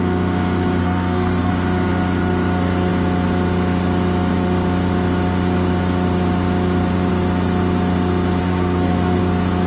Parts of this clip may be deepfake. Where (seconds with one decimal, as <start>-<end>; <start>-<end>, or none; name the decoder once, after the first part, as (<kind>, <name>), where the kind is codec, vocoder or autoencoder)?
0.8-1.5 (codec, SNAC); 8.4-9.2